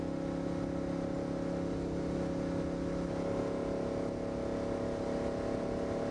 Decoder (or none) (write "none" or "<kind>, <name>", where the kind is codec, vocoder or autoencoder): none